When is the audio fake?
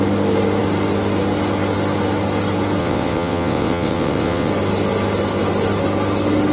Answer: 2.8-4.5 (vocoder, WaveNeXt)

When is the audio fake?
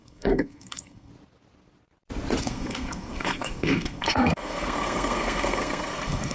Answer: 0.0-1.1 (codec, SNAC); 2.4-6.3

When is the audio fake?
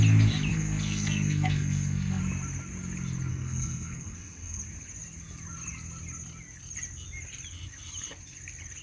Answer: 0.5-2.2 (codec, SNAC); 3.3-4.6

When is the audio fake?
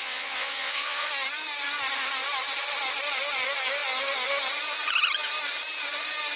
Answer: 0.0-1.1 (vocoder, Vocos)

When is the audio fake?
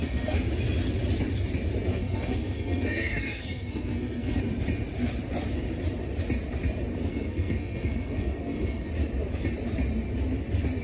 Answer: 0.0-0.5 (codec, SNAC); 1.9-4.4; 7.1-8.9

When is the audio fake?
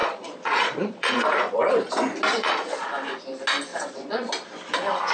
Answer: 0.0-1.7 (vocoder, Vocos); 2.3-2.9; 3.7-4.3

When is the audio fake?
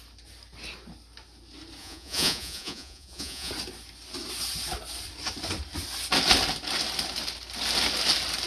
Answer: 1.8-3.5 (vocoder, Vocos)